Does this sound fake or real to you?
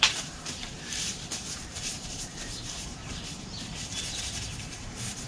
fake